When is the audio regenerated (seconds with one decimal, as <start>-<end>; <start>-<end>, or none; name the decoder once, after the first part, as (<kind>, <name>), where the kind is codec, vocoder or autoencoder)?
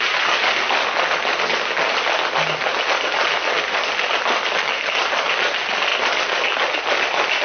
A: none